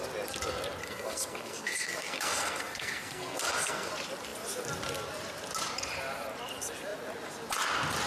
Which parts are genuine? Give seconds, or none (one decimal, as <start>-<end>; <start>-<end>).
0.0-0.8; 3.9-8.1